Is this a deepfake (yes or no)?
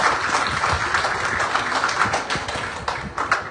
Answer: no